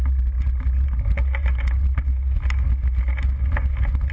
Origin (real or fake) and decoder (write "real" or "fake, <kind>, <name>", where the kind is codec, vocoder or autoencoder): real